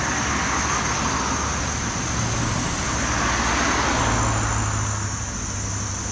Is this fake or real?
real